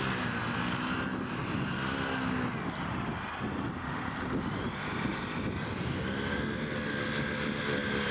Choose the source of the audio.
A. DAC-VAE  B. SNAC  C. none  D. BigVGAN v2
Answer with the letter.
C